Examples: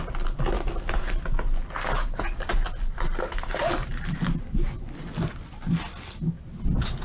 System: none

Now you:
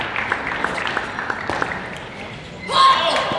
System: none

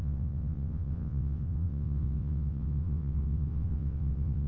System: vocoder, WaveNeXt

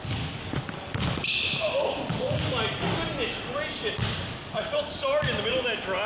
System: none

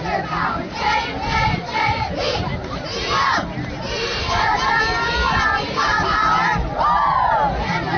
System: none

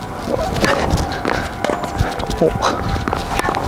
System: none